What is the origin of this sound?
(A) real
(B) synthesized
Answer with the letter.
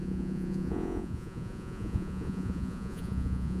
B